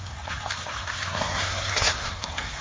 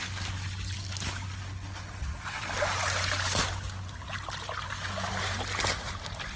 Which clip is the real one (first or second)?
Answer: second